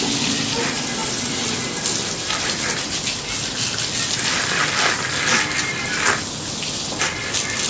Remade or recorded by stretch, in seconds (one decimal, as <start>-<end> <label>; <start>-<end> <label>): 0.0-7.7 recorded